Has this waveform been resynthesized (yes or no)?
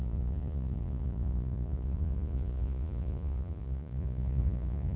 yes